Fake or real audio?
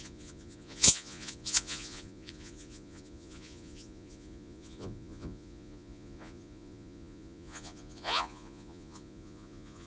fake